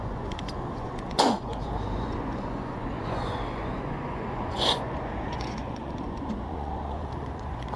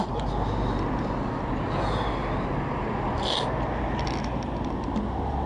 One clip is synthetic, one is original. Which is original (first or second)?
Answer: second